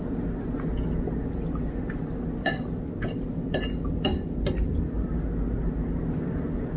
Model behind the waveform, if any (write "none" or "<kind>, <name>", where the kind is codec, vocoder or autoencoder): none